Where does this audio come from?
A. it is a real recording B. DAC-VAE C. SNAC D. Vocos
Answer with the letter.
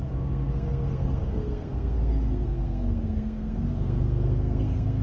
C